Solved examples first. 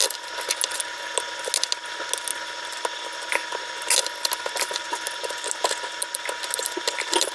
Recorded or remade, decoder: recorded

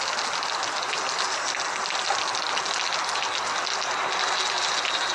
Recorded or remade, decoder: recorded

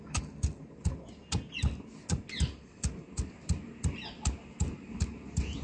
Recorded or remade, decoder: recorded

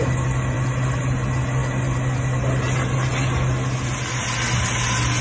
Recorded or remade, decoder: recorded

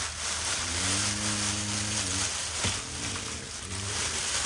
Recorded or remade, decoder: recorded